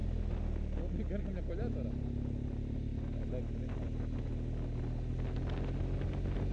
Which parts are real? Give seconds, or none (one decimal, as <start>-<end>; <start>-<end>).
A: 0.0-6.5